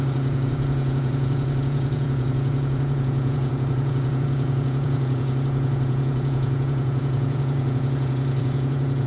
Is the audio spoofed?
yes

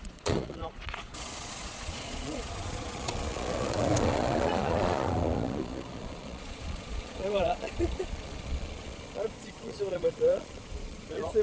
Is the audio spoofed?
yes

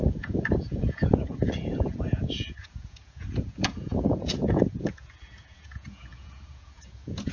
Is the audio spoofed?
yes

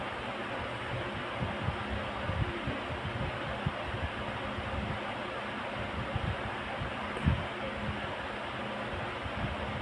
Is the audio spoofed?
no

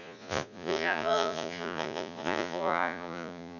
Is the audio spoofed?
yes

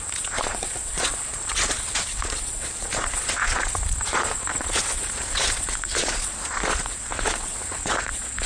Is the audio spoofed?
yes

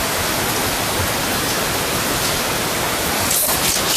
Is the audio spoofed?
no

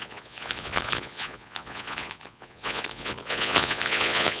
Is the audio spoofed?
yes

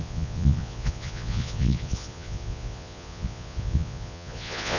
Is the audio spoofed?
yes